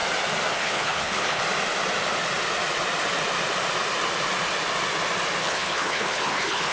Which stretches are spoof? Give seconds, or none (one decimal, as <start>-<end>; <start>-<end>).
0.5-1.4; 5.4-6.7